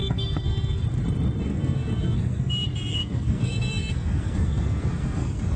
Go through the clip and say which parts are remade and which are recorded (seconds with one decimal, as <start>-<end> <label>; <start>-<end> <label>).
0.0-0.8 remade; 0.8-1.5 recorded; 1.5-2.5 remade; 2.5-2.9 recorded; 2.9-5.6 remade